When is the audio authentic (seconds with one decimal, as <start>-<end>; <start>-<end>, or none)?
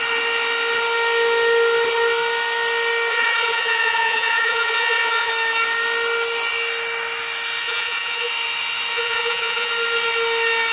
0.0-3.1; 5.3-7.6; 8.3-8.9; 9.7-10.7